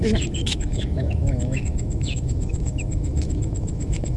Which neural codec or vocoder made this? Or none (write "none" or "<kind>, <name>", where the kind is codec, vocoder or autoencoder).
autoencoder, DAC-VAE